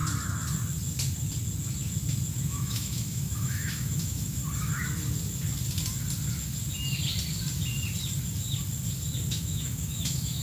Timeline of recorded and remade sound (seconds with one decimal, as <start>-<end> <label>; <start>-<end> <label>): 0.0-2.3 recorded; 2.3-4.4 remade; 4.4-9.3 recorded; 9.3-10.4 remade